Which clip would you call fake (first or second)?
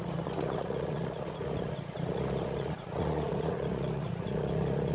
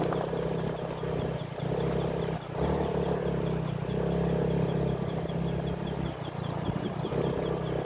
first